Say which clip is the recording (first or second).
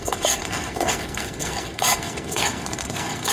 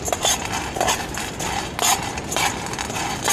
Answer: second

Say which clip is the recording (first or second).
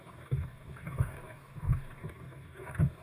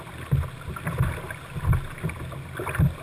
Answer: second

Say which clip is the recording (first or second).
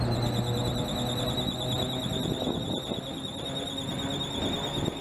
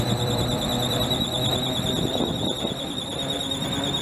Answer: first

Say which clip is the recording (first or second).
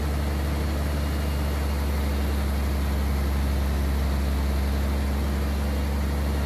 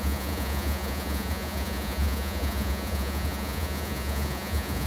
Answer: first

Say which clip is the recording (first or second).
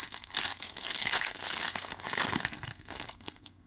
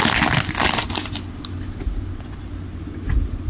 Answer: second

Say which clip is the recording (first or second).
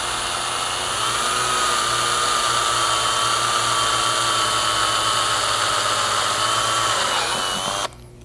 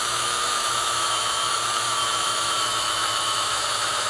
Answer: first